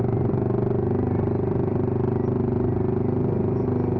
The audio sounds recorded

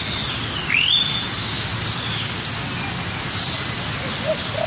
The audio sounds recorded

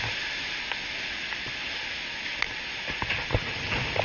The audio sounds recorded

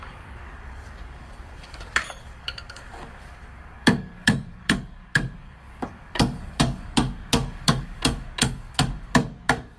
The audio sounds remade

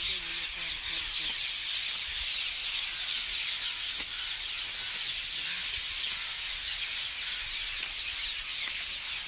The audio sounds recorded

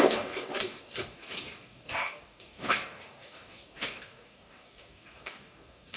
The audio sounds remade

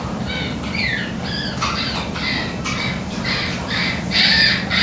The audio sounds recorded